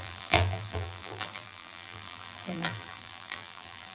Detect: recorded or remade remade